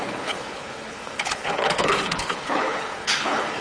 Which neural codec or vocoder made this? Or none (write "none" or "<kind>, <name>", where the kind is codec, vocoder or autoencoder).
codec, HILCodec